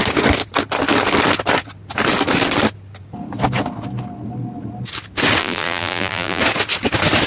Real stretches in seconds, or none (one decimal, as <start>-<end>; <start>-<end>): 0.0-5.4; 6.4-7.3